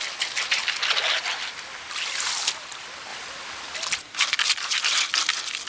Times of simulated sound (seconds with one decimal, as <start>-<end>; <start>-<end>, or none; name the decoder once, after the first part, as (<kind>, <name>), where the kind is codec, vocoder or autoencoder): none

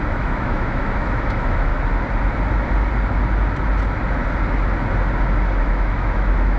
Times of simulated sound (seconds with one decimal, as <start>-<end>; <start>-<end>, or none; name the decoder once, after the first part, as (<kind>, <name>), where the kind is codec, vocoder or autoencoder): 0.0-1.7 (autoencoder, DAC-VAE); 5.6-6.6

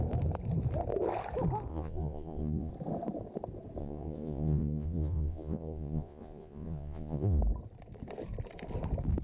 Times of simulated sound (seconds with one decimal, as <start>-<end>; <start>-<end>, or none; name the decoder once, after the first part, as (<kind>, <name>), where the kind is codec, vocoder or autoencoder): 1.7-2.7 (vocoder, Vocos); 3.8-7.4

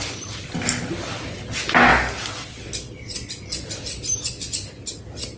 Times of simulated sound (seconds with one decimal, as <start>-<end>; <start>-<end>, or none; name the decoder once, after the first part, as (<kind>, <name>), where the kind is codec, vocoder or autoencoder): none

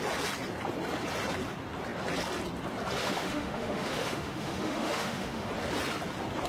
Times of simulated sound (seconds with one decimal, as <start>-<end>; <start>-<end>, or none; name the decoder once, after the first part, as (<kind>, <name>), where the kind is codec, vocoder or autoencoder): 3.0-5.5 (autoencoder, DAC-VAE)

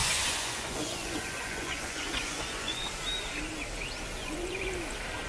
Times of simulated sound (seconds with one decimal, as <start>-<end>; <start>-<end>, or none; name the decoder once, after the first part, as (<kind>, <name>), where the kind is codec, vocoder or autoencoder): 0.0-2.9 (vocoder, Vocos); 4.2-4.7

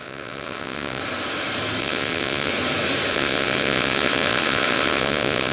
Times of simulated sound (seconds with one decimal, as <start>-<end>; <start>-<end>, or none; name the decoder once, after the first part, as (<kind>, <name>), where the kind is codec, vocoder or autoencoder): 0.0-1.0 (vocoder, WaveNeXt); 1.8-2.5; 3.1-5.5